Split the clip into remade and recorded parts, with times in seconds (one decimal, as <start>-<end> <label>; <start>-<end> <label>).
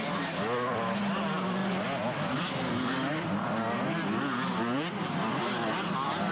0.0-1.6 remade; 1.6-5.4 recorded; 5.4-6.3 remade